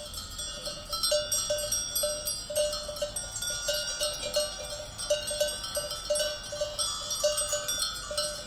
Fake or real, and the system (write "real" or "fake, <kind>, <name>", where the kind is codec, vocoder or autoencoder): real